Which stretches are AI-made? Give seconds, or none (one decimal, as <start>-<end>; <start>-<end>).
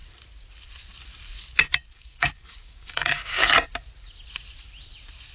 1.9-3.5